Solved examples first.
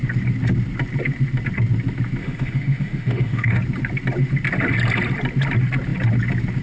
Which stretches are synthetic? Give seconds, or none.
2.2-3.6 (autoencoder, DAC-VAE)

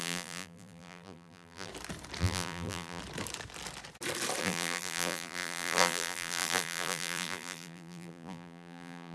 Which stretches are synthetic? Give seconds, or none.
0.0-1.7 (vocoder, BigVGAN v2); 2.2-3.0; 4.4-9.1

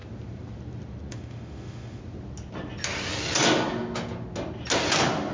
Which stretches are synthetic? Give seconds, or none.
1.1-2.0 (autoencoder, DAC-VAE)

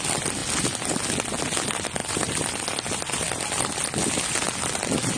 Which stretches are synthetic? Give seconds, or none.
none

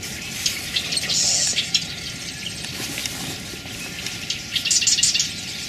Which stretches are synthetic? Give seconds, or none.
none

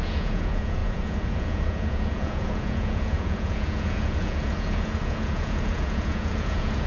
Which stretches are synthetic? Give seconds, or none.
0.0-6.9 (vocoder, Vocos)

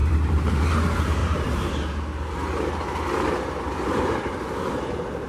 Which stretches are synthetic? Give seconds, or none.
0.0-0.6 (vocoder, BigVGAN v2); 1.2-1.7